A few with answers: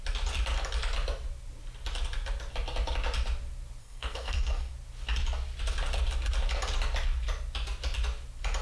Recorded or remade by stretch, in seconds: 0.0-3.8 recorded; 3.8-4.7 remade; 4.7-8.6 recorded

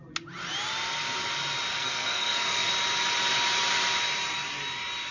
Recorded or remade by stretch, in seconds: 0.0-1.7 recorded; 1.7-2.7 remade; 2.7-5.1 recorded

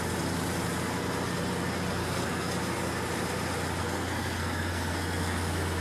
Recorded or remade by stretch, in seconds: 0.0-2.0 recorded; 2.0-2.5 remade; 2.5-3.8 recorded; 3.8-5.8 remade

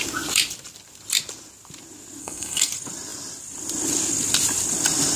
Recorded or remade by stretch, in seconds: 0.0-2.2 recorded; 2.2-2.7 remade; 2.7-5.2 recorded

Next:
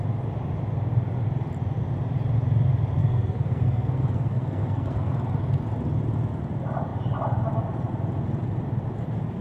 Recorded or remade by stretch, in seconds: 0.0-3.0 recorded; 3.0-5.1 remade; 5.1-9.4 recorded